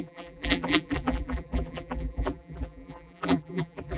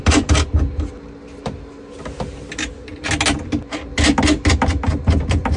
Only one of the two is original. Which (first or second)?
second